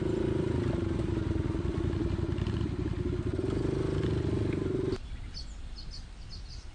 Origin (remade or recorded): recorded